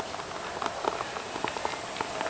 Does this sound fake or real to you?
real